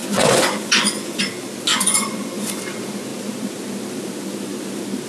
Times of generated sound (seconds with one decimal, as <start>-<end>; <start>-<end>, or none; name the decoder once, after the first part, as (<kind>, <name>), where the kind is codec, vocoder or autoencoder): 0.0-1.2 (vocoder, Vocos); 1.7-2.6